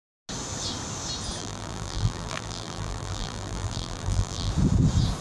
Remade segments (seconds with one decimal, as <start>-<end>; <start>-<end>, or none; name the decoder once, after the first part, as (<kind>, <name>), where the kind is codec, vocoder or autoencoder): 1.4-4.5 (vocoder, BigVGAN v2)